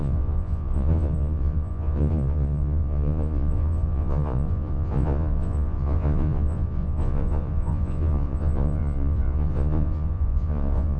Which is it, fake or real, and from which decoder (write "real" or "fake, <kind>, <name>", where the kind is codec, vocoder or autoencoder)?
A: fake, vocoder, Vocos